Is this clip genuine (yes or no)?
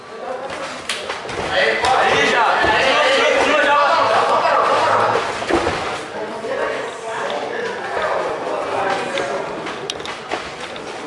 yes